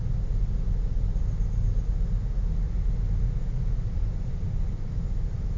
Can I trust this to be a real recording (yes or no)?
yes